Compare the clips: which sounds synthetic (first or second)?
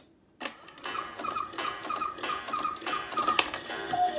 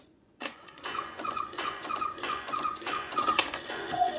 second